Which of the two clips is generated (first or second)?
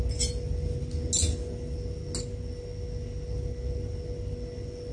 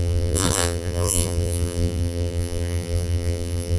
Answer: second